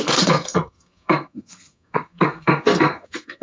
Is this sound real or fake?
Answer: fake